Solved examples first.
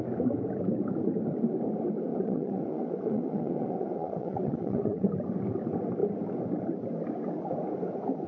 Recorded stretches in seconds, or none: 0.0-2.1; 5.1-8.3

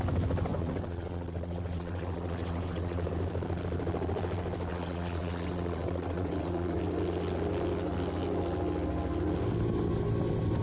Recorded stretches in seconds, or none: 0.0-0.5; 3.1-4.7; 6.8-10.6

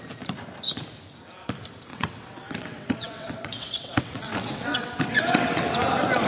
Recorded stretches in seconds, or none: 0.0-1.9; 5.7-6.3

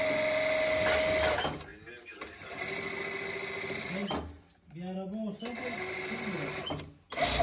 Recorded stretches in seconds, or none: 0.0-7.4